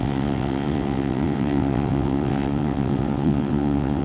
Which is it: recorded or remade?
remade